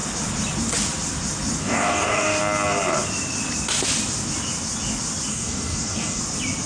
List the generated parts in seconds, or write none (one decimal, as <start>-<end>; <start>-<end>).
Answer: 1.6-2.4; 5.3-6.2